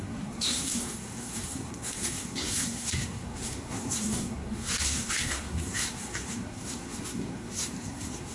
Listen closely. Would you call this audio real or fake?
fake